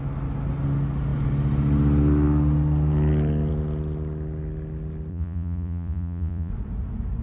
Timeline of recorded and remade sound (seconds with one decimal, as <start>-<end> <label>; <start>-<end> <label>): 0.0-5.1 recorded; 5.1-6.5 remade; 6.5-7.2 recorded